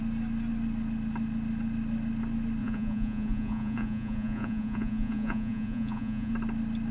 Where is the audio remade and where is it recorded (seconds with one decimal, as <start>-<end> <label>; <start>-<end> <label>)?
0.0-2.6 recorded; 2.6-6.3 remade; 6.3-6.9 recorded